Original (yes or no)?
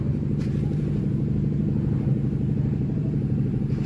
no